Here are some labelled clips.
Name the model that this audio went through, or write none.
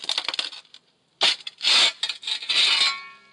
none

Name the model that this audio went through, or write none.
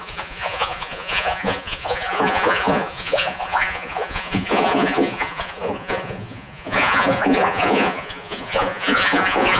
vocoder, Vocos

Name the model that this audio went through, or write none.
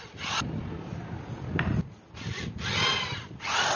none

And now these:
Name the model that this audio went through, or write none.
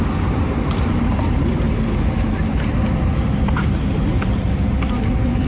none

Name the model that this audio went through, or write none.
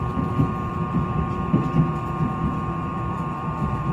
vocoder, BigVGAN v2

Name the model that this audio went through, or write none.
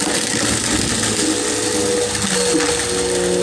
none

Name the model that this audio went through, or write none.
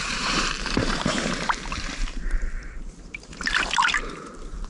vocoder, BigVGAN v2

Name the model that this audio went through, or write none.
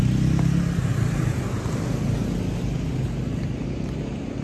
none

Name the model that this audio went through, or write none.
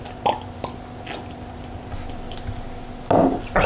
none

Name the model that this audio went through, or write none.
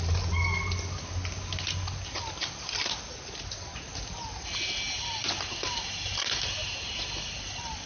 none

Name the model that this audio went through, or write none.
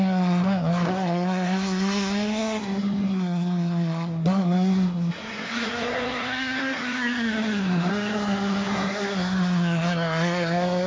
codec, SNAC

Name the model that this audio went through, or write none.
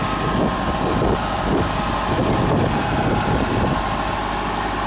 none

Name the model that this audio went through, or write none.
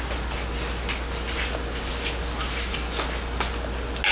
none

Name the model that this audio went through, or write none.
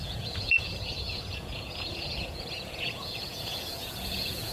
vocoder, Vocos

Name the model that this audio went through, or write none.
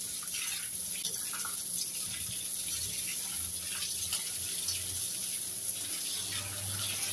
none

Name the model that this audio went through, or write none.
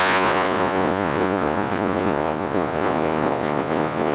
vocoder, Vocos